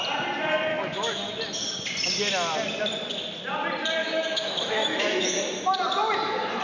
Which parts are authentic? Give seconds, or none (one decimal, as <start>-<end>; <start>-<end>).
0.0-0.7; 1.3-4.0; 5.4-6.6

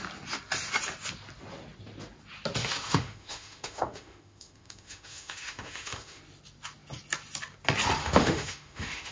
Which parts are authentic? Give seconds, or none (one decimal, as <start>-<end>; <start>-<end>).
0.0-2.6; 6.2-8.0

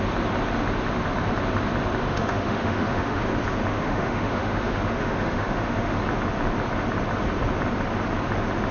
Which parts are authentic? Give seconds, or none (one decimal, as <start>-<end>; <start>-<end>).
0.0-2.0; 3.2-3.7; 6.0-8.7

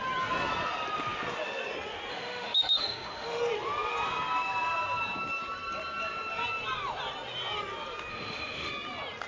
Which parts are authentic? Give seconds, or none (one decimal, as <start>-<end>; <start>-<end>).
0.0-2.1; 3.4-8.1; 8.7-9.3

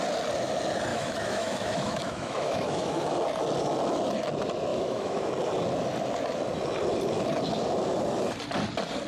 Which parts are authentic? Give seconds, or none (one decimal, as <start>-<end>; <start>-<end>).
0.0-0.9; 3.0-4.7; 5.3-9.1